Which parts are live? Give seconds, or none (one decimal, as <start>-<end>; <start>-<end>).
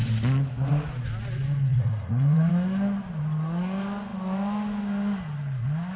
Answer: 0.0-1.7; 2.5-6.0